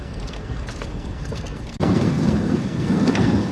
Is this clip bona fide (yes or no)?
no